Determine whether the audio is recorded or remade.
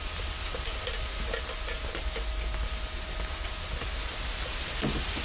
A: recorded